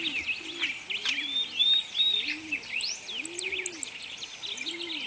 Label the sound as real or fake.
real